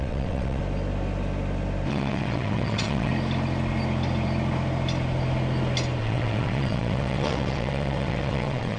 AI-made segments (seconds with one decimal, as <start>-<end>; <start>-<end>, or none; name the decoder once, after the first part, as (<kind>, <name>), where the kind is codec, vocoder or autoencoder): 0.0-0.6 (vocoder, WaveNeXt); 1.9-3.1; 6.0-8.8